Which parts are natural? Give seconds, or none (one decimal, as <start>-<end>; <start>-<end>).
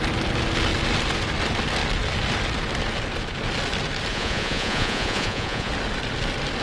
0.0-4.1; 5.7-6.6